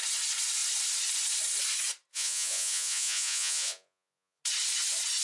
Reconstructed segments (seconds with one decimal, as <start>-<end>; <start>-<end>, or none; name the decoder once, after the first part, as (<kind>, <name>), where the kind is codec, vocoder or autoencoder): 2.1-4.4 (vocoder, Vocos)